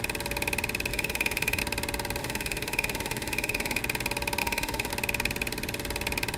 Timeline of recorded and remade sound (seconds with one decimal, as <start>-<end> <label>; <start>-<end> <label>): 0.0-0.9 recorded; 0.9-1.6 remade; 1.6-2.2 recorded; 2.2-3.8 remade; 3.8-4.4 recorded; 4.4-4.9 remade; 4.9-6.4 recorded